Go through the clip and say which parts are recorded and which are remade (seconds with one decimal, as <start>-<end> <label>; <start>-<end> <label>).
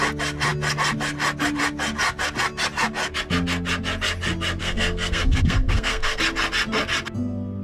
0.0-4.6 recorded; 4.6-6.2 remade; 6.2-7.6 recorded